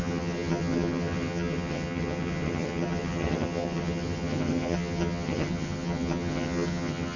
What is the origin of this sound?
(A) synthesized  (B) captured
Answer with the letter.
A